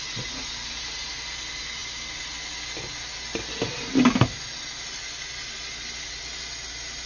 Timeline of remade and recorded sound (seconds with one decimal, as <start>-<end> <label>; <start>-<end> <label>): 0.0-7.1 recorded